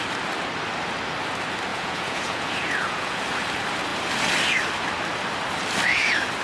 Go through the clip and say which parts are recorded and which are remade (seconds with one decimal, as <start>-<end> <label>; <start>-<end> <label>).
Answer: 0.0-1.7 recorded; 1.7-3.2 remade; 3.2-6.4 recorded